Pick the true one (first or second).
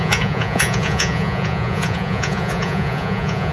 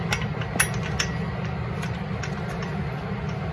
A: second